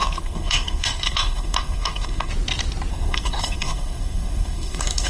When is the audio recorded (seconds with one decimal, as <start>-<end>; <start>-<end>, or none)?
2.3-2.9